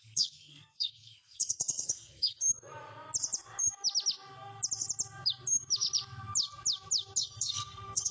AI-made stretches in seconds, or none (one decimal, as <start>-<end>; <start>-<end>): 0.0-2.4; 7.2-8.1

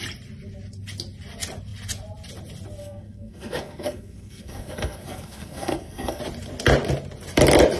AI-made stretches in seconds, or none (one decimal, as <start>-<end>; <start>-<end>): 2.8-6.2

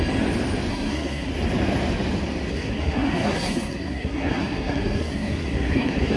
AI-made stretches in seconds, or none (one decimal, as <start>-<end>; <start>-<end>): 0.7-1.3; 2.5-6.2

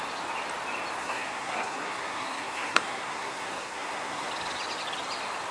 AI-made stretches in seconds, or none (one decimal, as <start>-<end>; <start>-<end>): 1.0-4.3

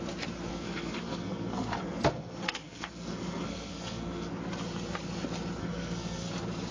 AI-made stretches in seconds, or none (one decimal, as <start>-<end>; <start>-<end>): 0.5-4.3; 5.6-6.3

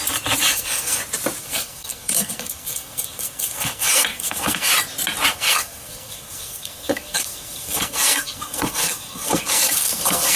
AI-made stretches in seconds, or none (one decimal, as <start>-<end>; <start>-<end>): 0.4-1.0; 1.4-4.7; 5.3-10.4

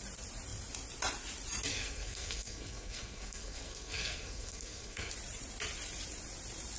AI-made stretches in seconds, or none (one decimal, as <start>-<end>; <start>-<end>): 1.7-5.1